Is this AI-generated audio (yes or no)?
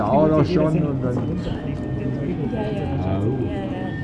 no